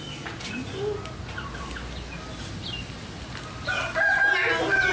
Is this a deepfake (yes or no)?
no